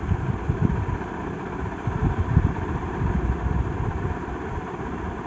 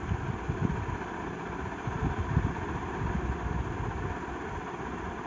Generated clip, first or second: first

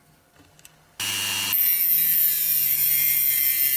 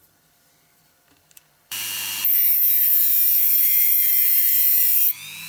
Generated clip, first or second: second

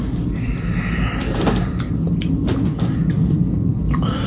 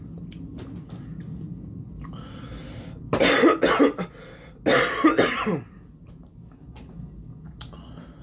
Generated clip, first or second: first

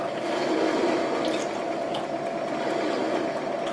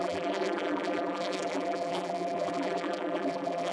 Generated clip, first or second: second